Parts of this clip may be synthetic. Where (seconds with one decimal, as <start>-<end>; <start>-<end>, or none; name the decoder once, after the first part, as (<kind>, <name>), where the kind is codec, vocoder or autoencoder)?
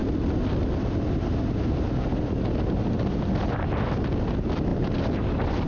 none